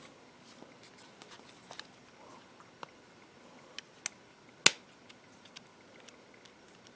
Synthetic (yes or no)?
no